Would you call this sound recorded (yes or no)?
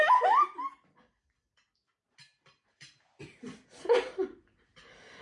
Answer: yes